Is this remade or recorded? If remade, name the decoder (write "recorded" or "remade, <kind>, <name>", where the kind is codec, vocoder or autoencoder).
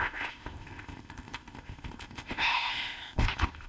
remade, codec, ZipCodec